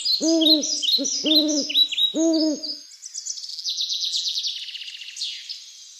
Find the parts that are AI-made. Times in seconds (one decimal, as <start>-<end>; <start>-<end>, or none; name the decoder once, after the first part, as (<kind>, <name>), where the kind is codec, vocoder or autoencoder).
3.5-4.4 (vocoder, BigVGAN v2)